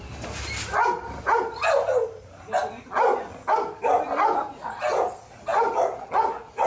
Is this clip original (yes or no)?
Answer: yes